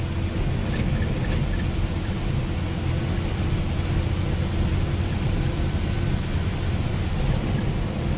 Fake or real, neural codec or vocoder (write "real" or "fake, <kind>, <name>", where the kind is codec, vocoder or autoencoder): real